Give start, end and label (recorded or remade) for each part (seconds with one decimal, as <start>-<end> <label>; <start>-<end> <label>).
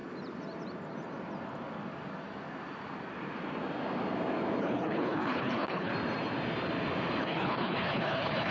0.0-4.6 recorded; 4.6-5.9 remade; 5.9-7.2 recorded; 7.2-8.5 remade